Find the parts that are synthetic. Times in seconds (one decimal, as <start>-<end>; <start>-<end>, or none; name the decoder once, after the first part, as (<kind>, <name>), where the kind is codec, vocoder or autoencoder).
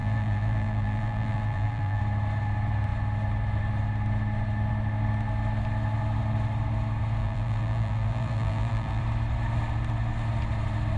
0.0-2.0 (vocoder, BigVGAN v2); 7.2-9.0